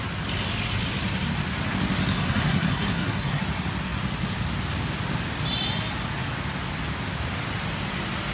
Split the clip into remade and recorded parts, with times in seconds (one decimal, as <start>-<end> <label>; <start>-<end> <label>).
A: 0.0-2.1 recorded; 2.1-3.4 remade; 3.4-8.3 recorded